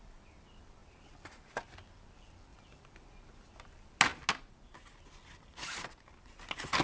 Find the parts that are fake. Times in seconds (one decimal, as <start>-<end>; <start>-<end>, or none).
none